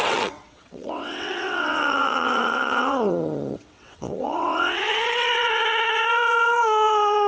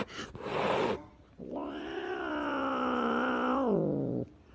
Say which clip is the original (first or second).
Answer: second